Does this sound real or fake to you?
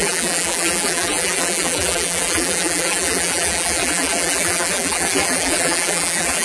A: fake